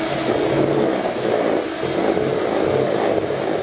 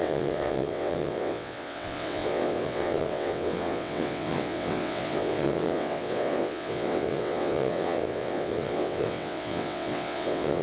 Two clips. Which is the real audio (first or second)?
first